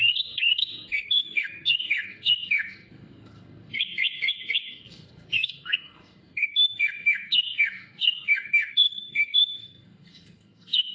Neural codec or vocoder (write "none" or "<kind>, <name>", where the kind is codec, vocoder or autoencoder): codec, SNAC